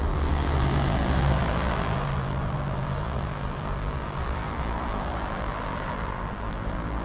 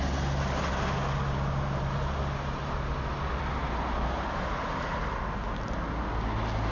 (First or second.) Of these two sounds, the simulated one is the first